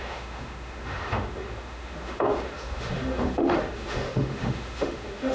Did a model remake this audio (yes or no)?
yes